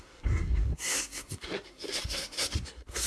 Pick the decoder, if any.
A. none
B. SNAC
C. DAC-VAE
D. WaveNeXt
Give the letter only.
B